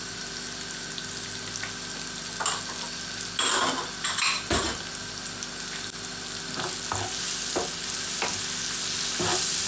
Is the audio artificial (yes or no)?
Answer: no